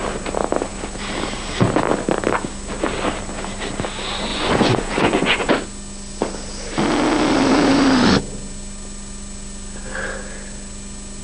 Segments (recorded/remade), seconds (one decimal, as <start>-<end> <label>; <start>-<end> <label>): 0.0-4.3 recorded; 4.3-5.5 remade; 5.5-11.2 recorded